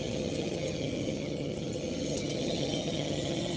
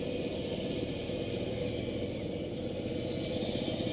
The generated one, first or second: first